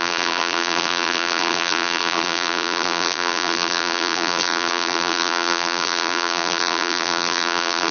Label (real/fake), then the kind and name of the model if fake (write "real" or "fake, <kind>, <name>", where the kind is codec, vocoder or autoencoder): fake, vocoder, BigVGAN v2